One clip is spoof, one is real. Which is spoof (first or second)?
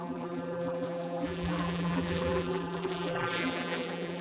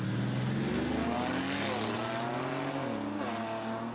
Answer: first